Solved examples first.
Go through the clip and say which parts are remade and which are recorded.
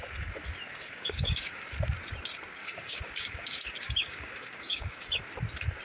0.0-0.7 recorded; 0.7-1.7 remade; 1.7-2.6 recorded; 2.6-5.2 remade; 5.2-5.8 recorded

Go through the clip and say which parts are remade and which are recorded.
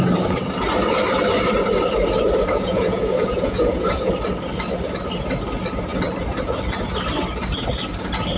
0.0-2.5 recorded; 2.5-4.1 remade; 4.1-8.4 recorded